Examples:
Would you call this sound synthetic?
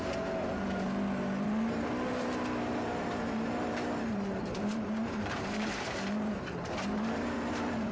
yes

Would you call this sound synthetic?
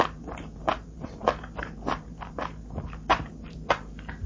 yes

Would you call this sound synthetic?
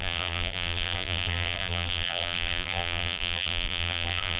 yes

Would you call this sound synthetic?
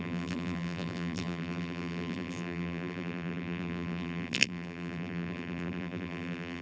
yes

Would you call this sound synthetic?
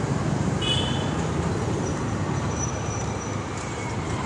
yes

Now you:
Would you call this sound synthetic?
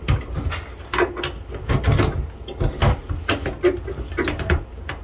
no